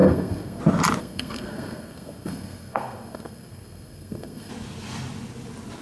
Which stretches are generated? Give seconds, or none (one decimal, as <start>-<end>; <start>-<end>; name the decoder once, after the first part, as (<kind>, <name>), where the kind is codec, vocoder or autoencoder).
0.0-0.6 (codec, SNAC); 1.0-4.5